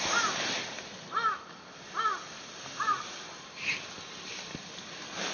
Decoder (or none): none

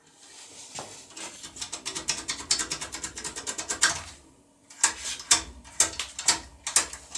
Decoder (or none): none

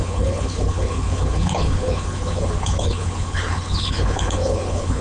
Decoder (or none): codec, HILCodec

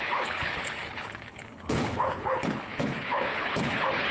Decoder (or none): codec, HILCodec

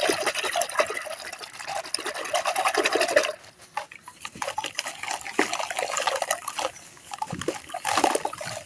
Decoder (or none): none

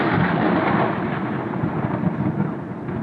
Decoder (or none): none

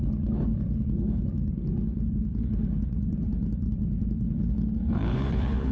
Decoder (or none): codec, HILCodec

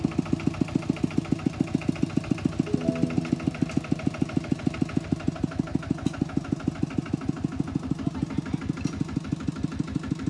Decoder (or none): none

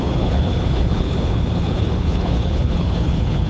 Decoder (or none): codec, HILCodec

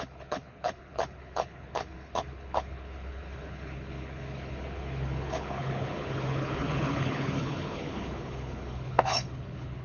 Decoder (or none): codec, HILCodec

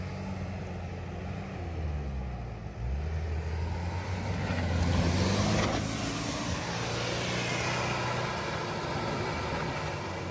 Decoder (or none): none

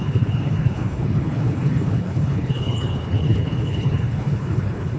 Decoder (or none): codec, HILCodec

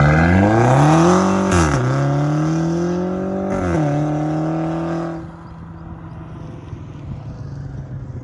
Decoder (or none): none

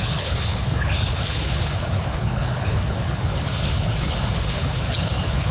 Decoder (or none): codec, HILCodec